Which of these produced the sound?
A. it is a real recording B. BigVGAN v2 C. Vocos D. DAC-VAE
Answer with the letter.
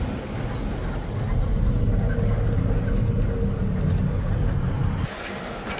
A